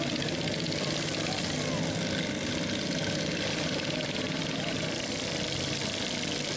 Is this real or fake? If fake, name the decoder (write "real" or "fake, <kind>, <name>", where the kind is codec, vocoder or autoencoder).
real